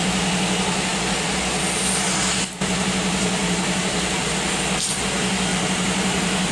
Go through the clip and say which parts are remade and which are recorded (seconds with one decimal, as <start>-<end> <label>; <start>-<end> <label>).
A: 0.0-3.4 recorded; 3.4-4.2 remade; 4.2-5.5 recorded; 5.5-6.5 remade